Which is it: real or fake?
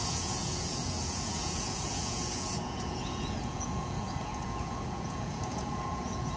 fake